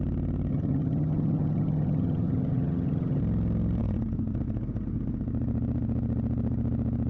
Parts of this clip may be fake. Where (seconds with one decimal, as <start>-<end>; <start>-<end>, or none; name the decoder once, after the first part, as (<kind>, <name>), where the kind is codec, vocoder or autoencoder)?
0.5-3.2 (vocoder, HiFi-GAN)